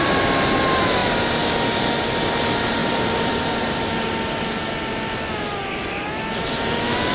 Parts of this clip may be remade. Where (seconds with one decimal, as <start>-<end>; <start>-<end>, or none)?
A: none